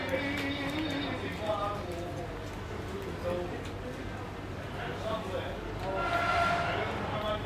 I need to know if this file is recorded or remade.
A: recorded